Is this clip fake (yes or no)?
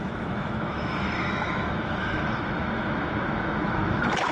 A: yes